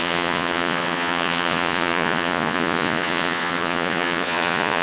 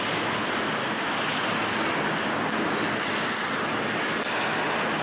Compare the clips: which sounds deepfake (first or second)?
first